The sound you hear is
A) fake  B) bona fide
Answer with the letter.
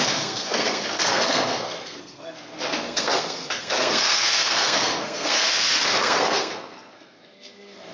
A